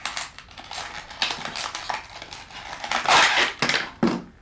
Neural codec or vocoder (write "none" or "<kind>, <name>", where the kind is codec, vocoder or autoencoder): none